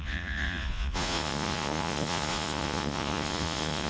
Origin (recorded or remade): remade